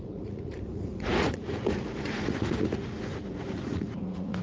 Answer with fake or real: fake